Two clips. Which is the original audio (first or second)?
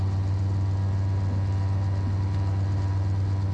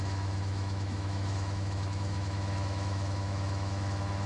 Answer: first